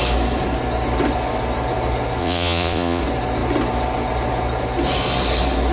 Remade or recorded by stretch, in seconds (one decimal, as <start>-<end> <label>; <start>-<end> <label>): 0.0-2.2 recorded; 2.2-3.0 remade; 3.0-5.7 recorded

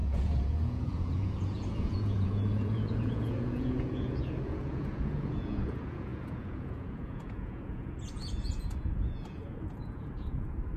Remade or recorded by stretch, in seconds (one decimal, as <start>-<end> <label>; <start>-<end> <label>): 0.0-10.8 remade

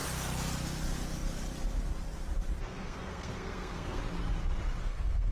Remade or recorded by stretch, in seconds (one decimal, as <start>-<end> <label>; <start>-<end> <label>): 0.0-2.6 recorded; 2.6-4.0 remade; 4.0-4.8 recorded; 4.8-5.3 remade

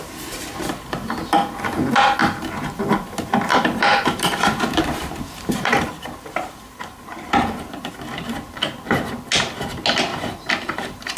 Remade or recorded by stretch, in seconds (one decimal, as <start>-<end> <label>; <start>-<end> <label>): 0.0-2.2 recorded; 2.2-2.8 remade; 2.8-3.5 recorded; 3.5-7.9 remade; 7.9-10.1 recorded; 10.1-11.2 remade